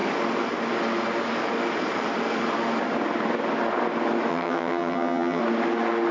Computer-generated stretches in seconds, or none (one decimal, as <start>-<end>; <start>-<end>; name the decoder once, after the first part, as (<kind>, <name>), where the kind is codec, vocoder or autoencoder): 4.3-5.4 (vocoder, HiFi-GAN)